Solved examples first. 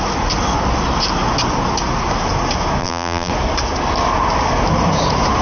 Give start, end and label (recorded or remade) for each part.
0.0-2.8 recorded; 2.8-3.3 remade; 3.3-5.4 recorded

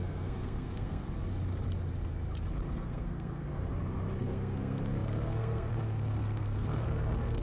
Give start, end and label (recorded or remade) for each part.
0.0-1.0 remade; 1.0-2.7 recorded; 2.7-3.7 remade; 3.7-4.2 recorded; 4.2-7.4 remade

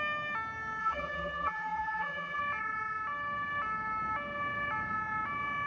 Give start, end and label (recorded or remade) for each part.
0.0-0.8 recorded; 0.8-2.4 remade; 2.4-5.7 recorded